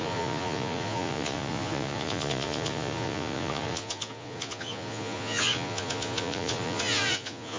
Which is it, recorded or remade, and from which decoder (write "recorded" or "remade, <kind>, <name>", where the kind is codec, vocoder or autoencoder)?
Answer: remade, vocoder, Vocos